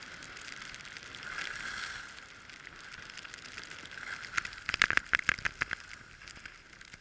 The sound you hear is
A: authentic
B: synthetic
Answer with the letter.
A